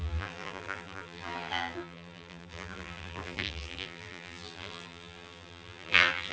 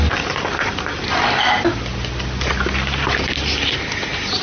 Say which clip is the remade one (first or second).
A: first